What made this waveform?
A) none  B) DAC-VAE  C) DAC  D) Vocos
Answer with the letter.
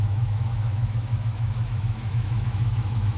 B